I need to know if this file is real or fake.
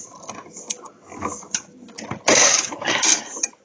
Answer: real